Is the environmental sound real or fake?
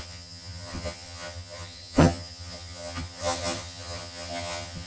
fake